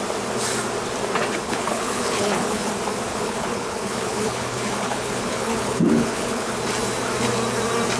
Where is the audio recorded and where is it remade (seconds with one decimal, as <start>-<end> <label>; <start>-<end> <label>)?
0.0-1.4 recorded; 1.4-2.7 remade; 2.7-3.1 recorded; 3.1-6.5 remade; 6.5-8.0 recorded